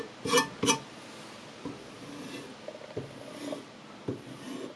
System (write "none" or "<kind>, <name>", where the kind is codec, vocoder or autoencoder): none